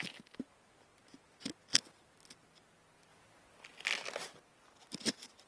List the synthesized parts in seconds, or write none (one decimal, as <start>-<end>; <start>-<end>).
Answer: none